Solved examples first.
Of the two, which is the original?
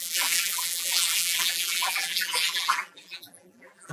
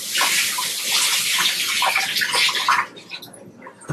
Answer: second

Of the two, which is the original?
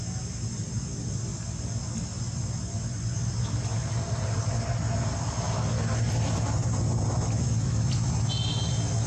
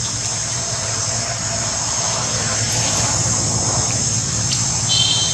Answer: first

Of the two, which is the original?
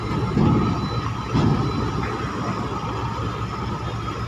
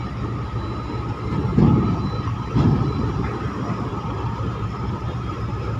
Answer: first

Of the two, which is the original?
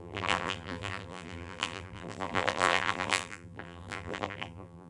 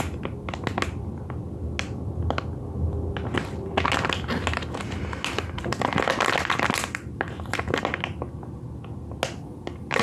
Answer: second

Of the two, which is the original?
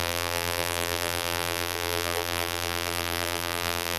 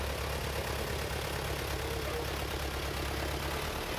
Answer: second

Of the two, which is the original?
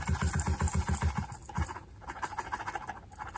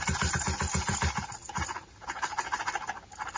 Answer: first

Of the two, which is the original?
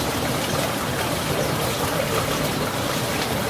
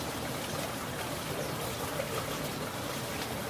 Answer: second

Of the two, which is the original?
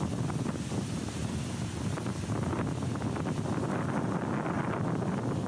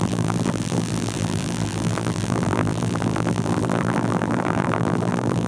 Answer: first